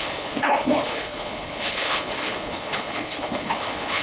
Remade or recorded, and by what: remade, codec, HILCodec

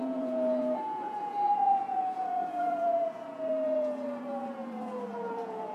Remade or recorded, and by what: remade, vocoder, Vocos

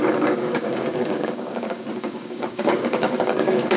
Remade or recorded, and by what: remade, codec, DAC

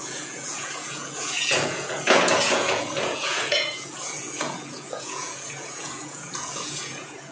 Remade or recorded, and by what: remade, vocoder, Vocos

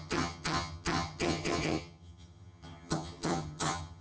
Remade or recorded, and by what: remade, vocoder, HiFi-GAN